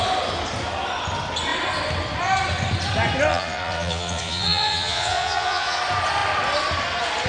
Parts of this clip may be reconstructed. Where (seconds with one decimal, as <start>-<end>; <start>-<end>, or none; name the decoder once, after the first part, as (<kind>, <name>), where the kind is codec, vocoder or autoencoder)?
3.3-5.8 (vocoder, Vocos)